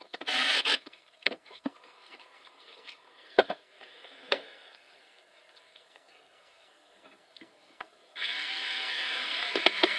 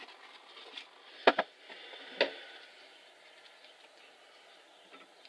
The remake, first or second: first